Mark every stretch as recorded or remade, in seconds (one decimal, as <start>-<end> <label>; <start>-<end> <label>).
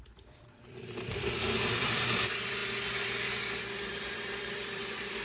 0.0-5.2 remade